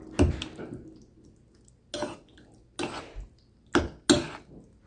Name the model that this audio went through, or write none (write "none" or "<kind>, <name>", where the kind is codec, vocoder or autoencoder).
none